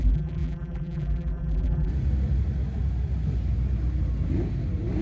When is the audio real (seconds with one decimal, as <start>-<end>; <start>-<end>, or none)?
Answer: 1.9-5.0